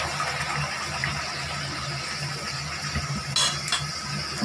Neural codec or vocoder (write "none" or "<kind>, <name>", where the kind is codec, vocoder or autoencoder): none